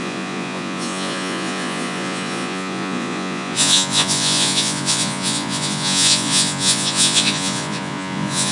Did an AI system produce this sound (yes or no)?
yes